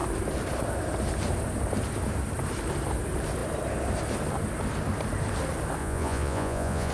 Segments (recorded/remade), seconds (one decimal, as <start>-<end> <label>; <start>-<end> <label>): 0.0-5.8 recorded; 5.8-6.9 remade